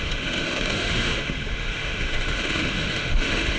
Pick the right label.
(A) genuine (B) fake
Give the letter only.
B